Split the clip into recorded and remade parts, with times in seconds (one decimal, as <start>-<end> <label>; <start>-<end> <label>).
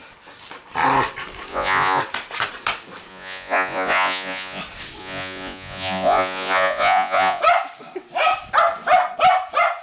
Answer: 0.0-1.5 recorded; 1.5-2.0 remade; 2.0-3.1 recorded; 3.1-4.6 remade; 4.6-5.0 recorded; 5.0-7.4 remade; 7.4-9.8 recorded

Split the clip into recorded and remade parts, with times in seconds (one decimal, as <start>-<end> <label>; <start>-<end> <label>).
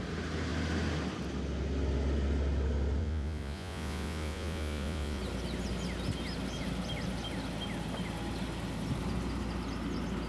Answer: 0.0-3.0 recorded; 3.0-5.2 remade; 5.2-10.3 recorded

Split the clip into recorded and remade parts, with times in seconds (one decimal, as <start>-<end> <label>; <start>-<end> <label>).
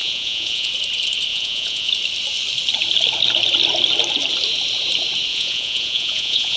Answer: 0.0-0.7 remade; 0.7-1.3 recorded; 1.3-1.9 remade; 1.9-5.3 recorded; 5.3-6.6 remade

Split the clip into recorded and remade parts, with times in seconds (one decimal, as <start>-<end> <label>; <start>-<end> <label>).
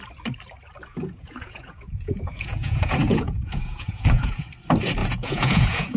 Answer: 0.0-0.9 recorded; 0.9-4.5 remade; 4.5-5.0 recorded; 5.0-6.0 remade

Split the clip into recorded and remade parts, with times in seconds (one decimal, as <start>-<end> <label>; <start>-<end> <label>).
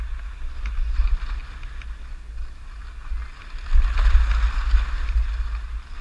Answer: 0.0-6.0 recorded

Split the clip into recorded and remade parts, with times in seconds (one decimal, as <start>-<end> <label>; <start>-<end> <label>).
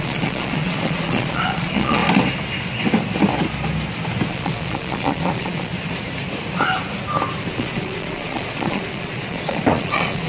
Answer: 0.0-2.0 remade; 2.0-4.3 recorded; 4.3-5.7 remade; 5.7-7.5 recorded; 7.5-10.3 remade